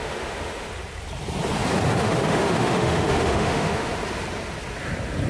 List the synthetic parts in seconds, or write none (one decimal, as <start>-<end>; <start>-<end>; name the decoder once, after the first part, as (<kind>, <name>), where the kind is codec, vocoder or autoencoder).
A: 0.0-0.7 (autoencoder, DAC-VAE); 2.0-3.9